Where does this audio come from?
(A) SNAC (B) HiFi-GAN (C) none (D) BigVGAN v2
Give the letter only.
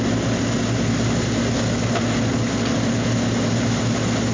C